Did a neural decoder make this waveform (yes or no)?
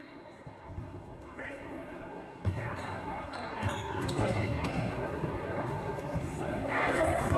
yes